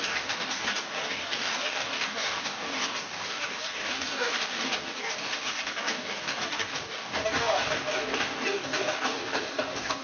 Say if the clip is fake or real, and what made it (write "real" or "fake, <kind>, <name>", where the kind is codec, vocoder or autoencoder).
fake, codec, DAC